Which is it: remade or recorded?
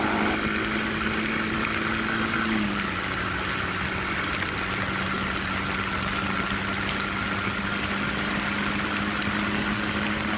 recorded